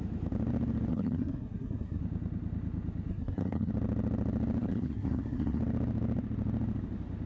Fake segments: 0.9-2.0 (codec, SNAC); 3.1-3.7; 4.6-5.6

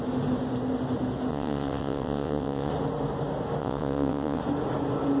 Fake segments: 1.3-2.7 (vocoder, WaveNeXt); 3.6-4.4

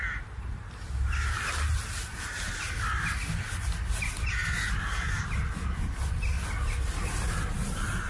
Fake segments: none

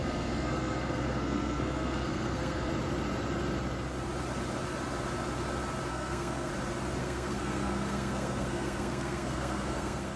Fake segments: 0.0-2.7 (codec, SNAC); 5.9-6.5; 7.0-10.2

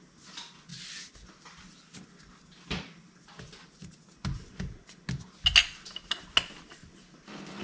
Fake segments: none

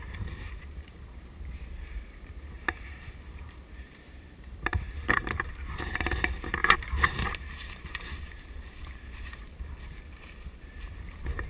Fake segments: 0.0-11.5 (vocoder, BigVGAN v2)

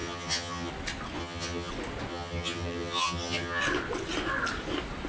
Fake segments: 0.0-0.7 (vocoder, HiFi-GAN); 1.2-1.7; 2.1-3.6